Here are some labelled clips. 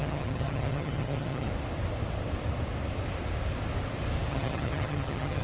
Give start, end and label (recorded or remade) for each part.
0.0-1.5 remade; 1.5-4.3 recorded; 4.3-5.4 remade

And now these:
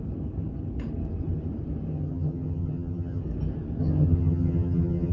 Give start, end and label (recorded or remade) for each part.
0.0-1.9 recorded; 1.9-3.2 remade; 3.2-3.8 recorded; 3.8-5.1 remade

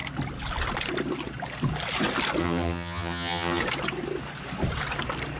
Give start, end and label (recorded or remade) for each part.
0.0-2.4 recorded; 2.4-3.6 remade; 3.6-5.4 recorded

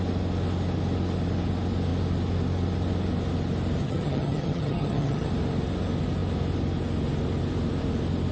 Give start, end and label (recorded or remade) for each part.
0.0-3.8 recorded; 3.8-5.3 remade; 5.3-8.3 recorded

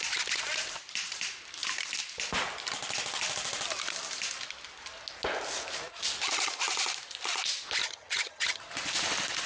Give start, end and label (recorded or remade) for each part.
0.0-7.8 recorded; 7.8-8.6 remade; 8.6-9.5 recorded